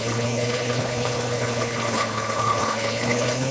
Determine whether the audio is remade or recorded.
remade